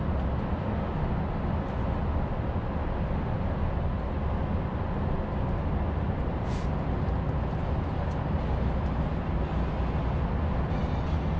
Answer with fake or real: real